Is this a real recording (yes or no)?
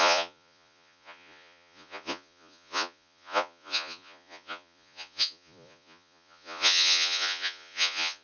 no